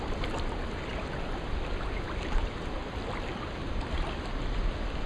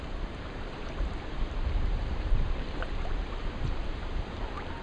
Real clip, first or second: first